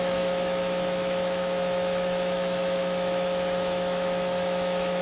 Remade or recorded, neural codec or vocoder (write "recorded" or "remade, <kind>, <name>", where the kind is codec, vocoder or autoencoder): remade, autoencoder, DAC-VAE